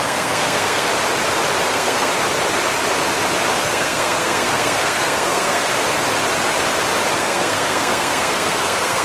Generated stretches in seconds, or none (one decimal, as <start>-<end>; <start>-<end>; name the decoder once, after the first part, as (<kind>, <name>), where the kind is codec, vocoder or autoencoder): 0.0-0.9 (codec, SNAC); 1.7-2.1; 3.5-5.7; 7.1-9.0